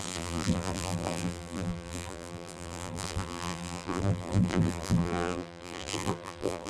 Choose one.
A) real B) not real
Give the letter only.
B